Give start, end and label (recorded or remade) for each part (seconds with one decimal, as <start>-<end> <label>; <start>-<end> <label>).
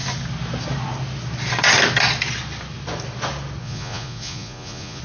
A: 0.0-3.6 recorded; 3.6-5.0 remade